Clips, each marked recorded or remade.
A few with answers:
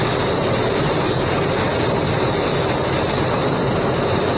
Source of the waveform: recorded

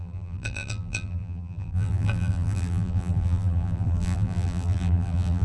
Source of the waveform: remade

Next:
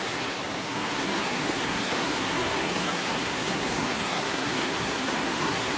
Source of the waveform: remade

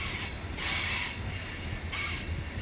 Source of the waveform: recorded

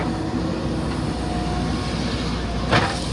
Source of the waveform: recorded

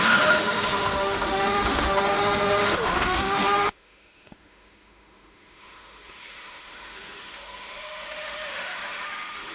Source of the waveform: remade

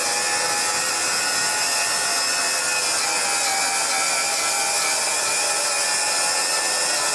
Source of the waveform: recorded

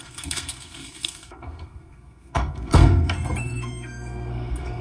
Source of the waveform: remade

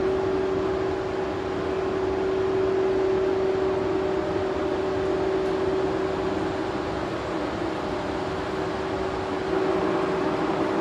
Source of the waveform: recorded